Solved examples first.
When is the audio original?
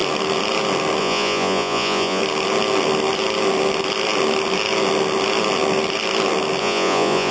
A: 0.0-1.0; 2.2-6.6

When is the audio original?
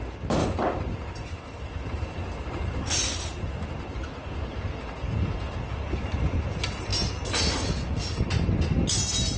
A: 0.0-0.4; 3.7-9.4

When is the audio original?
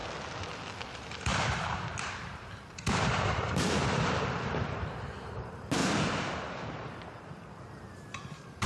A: 0.0-0.9; 5.8-7.7